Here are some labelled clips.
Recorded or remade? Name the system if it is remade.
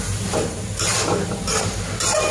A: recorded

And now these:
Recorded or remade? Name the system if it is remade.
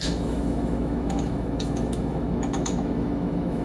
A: remade, autoencoder, DAC-VAE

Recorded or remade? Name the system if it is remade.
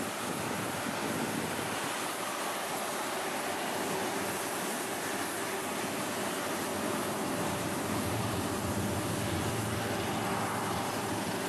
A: recorded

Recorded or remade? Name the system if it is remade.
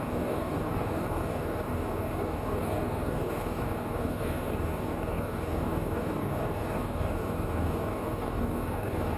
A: remade, codec, DAC